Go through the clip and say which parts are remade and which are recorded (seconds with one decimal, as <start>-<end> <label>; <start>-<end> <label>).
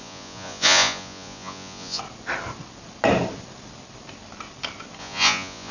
0.0-2.0 remade; 2.0-5.0 recorded; 5.0-5.7 remade